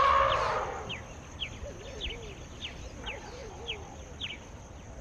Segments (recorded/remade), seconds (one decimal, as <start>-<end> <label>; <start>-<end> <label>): 0.0-5.0 recorded